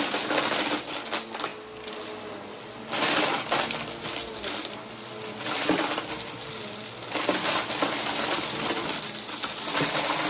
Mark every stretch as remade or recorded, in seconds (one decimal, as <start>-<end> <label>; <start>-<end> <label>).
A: 0.0-10.3 recorded